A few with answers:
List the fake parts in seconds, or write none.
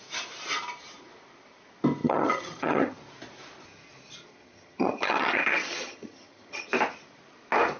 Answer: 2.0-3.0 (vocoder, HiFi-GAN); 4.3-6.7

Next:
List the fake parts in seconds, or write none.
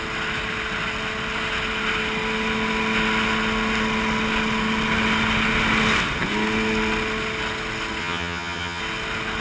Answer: 8.0-8.8 (vocoder, HiFi-GAN)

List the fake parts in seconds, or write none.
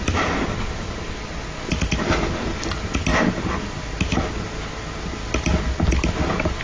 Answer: none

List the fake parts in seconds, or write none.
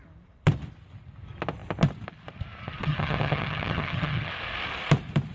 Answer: 2.6-4.3 (vocoder, HiFi-GAN)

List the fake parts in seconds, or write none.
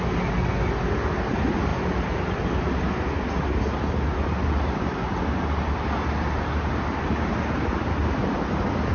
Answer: none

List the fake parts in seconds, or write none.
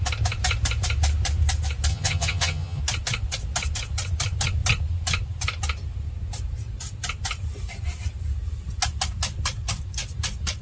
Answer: 1.9-2.8 (vocoder, HiFi-GAN)